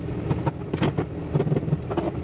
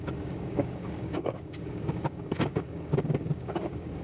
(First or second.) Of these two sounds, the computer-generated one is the second